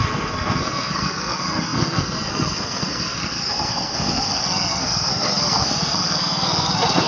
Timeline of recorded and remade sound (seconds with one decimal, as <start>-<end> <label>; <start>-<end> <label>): 0.0-7.1 remade